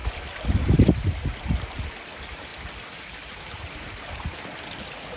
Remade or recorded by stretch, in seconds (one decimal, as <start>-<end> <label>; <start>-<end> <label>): 0.0-5.2 recorded